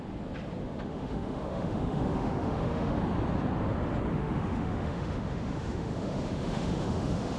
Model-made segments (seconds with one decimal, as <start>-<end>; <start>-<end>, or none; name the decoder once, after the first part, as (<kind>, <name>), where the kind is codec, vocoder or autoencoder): 0.6-3.0 (autoencoder, DAC-VAE); 4.1-7.4